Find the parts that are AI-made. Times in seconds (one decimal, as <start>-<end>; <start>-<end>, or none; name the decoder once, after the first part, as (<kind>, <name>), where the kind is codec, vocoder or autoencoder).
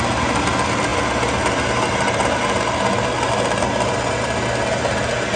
none